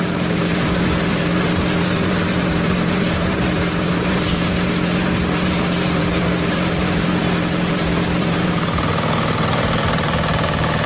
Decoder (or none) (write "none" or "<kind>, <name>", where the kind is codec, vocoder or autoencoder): vocoder, BigVGAN v2